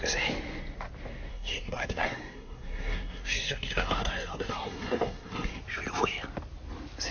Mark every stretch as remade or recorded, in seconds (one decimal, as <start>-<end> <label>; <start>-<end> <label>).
0.0-1.3 recorded; 1.3-5.6 remade; 5.6-7.1 recorded